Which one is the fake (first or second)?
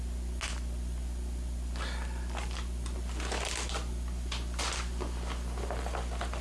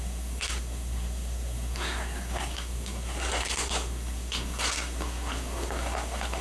second